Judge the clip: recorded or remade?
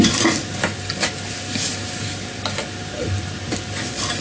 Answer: recorded